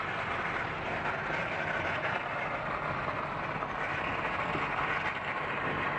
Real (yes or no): yes